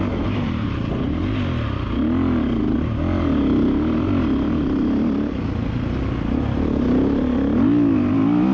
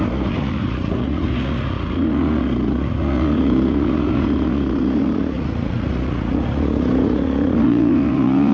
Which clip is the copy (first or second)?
second